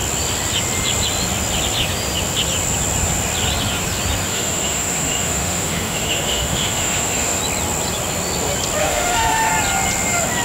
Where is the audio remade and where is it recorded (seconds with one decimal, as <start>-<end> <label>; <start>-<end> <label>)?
0.0-4.3 recorded; 4.3-7.4 remade; 7.4-8.8 recorded; 8.8-9.5 remade; 9.5-10.4 recorded